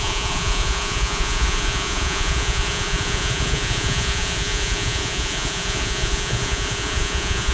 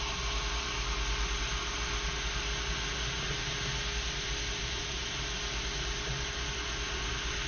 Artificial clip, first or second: first